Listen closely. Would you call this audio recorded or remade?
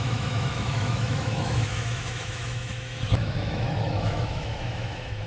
remade